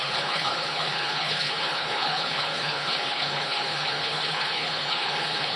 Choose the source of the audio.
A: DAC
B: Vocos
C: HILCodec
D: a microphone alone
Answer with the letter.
C